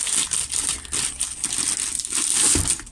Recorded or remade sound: recorded